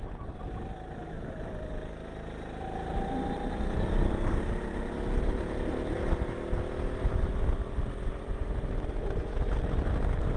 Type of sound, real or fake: real